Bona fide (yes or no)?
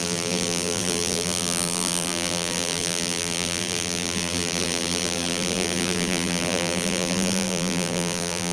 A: no